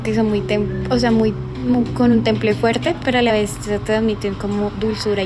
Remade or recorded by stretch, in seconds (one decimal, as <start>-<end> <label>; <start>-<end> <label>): 0.0-1.6 recorded; 1.6-3.3 remade; 3.3-5.3 recorded